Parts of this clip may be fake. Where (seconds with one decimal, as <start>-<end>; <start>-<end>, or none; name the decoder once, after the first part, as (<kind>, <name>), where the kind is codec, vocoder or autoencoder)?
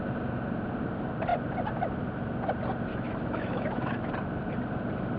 2.9-4.1 (autoencoder, DAC-VAE)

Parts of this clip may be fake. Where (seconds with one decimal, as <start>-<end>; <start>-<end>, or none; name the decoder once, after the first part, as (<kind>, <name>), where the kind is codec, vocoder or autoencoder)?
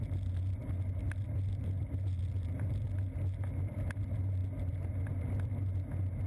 none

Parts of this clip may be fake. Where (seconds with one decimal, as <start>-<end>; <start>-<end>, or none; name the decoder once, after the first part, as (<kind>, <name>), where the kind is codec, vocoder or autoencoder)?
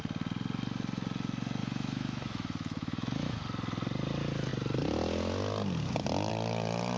1.6-3.4 (autoencoder, DAC-VAE)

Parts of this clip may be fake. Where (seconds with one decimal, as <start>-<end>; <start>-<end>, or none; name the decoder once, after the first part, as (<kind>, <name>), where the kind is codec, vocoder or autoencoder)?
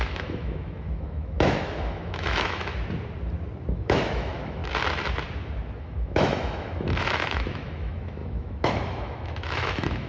0.0-2.7 (autoencoder, DAC-VAE); 3.7-4.6; 5.8-10.1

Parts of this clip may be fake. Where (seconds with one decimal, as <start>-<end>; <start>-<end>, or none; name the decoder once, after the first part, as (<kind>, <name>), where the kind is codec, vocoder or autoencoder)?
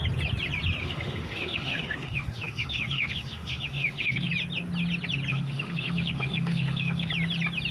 0.8-4.3 (autoencoder, DAC-VAE); 5.3-7.1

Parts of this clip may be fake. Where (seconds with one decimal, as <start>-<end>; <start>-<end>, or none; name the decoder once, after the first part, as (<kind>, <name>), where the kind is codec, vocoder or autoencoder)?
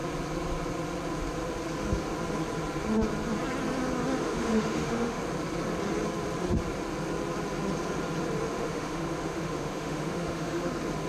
4.2-5.2 (autoencoder, DAC-VAE); 8.5-10.7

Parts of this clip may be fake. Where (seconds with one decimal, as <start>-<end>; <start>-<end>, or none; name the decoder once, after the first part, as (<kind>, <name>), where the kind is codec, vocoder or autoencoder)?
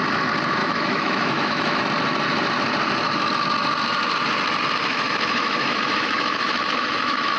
0.6-1.8 (autoencoder, DAC-VAE); 4.9-7.4